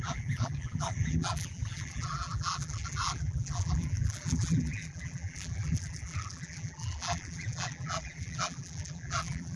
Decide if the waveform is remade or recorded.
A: remade